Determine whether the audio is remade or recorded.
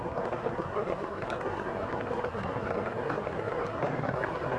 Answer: remade